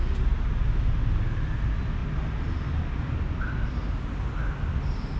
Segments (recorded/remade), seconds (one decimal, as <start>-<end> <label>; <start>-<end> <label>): 0.0-5.2 recorded